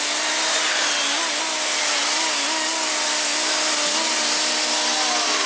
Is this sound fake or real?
real